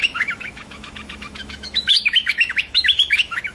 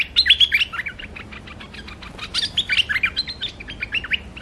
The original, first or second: second